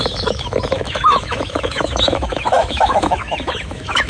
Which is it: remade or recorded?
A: remade